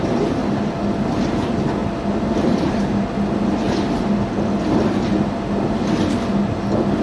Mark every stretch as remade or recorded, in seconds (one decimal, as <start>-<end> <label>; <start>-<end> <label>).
0.0-7.0 recorded